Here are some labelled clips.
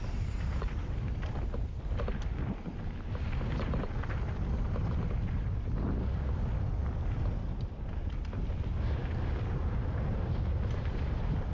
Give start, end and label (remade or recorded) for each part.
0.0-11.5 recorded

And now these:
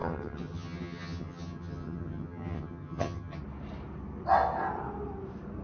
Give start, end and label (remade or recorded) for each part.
0.0-3.4 remade; 3.4-5.6 recorded

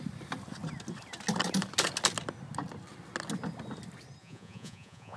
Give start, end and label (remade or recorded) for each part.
0.0-4.2 recorded; 4.2-5.2 remade

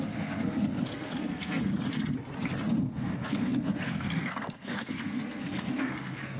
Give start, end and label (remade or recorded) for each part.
0.0-1.7 remade; 1.7-2.8 recorded; 2.8-6.4 remade

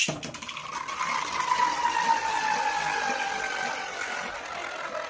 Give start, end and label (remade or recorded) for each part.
0.0-5.1 recorded

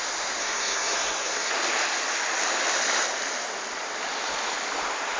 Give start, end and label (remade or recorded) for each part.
0.0-0.4 recorded; 0.4-1.5 remade; 1.5-5.2 recorded